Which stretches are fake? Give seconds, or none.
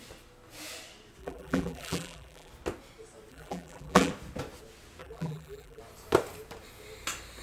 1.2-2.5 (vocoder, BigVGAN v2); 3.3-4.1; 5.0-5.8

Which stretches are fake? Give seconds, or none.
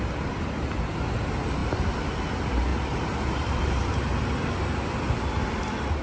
2.7-4.4 (vocoder, BigVGAN v2)